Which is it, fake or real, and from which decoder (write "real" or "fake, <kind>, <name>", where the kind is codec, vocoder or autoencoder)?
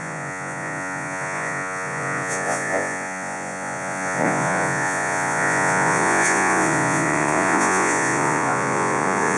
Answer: fake, vocoder, Vocos